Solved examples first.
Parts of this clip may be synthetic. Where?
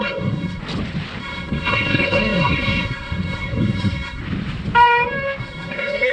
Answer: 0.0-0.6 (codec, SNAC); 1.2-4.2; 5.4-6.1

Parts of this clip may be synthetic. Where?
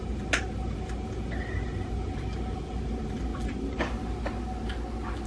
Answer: none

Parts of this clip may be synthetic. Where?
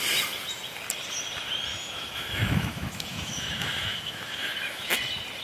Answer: 1.7-4.9 (autoencoder, DAC-VAE)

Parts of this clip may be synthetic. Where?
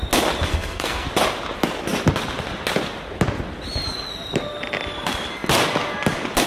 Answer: 0.5-1.1 (codec, SNAC)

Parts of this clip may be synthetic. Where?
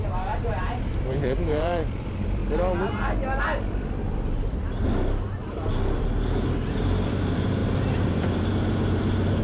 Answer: 0.0-2.4 (vocoder, BigVGAN v2); 6.6-9.4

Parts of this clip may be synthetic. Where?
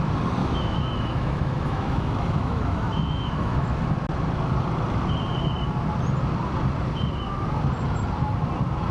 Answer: 0.4-3.8 (autoencoder, DAC-VAE)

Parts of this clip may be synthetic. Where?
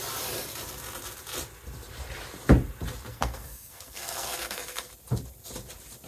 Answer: 3.1-4.9 (codec, SNAC)